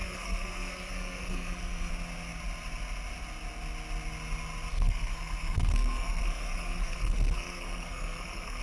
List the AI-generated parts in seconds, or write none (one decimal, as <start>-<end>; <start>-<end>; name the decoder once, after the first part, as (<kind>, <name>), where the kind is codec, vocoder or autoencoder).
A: 0.0-1.9 (codec, SNAC); 4.7-8.6